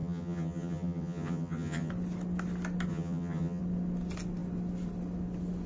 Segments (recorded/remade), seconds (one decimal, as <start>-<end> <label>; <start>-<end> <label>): 0.0-1.9 remade; 1.9-2.9 recorded; 2.9-3.6 remade; 3.6-5.7 recorded